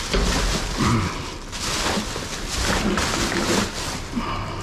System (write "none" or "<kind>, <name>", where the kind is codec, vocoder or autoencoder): none